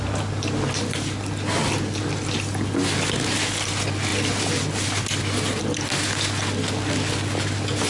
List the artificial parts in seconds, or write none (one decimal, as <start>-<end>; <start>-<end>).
none